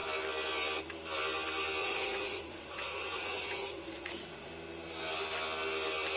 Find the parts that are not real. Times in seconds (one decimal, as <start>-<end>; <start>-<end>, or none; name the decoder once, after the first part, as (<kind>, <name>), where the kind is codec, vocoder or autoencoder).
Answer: 1.8-4.5 (vocoder, Vocos)